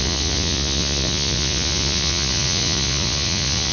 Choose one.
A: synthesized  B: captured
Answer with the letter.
A